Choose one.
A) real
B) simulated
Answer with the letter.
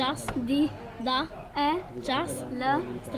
A